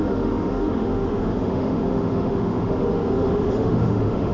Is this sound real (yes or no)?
no